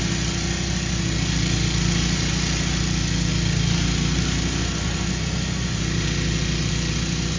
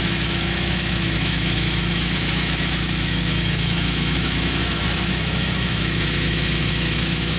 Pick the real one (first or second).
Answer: first